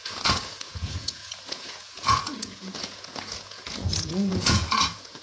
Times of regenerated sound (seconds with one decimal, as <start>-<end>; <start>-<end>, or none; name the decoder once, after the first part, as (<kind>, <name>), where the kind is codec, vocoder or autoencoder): 0.0-5.2 (vocoder, Vocos)